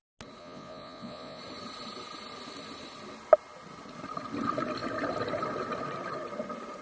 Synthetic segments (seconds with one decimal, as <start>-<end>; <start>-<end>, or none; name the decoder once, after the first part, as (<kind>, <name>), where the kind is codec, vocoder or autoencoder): 0.4-1.4 (vocoder, Vocos)